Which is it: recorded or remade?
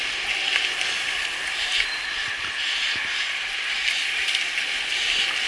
recorded